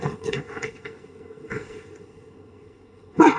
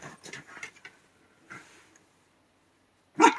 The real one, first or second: second